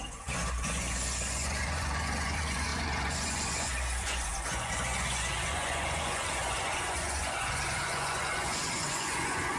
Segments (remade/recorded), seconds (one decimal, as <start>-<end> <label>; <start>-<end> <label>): 0.0-9.6 remade